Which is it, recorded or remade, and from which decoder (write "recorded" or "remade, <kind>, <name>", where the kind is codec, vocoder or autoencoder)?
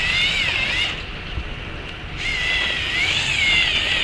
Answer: recorded